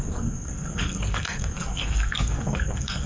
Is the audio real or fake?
fake